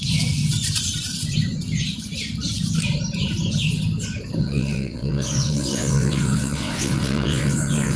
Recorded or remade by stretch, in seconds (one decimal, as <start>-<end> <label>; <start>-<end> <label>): 0.0-4.4 recorded; 4.4-8.0 remade